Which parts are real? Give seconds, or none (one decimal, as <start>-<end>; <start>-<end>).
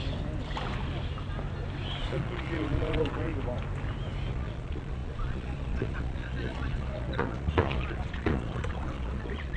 0.0-2.0; 3.3-4.3